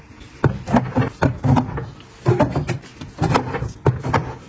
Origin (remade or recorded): recorded